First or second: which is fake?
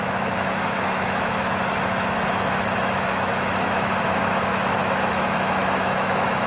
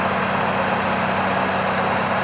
first